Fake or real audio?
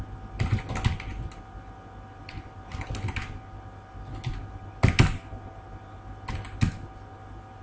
real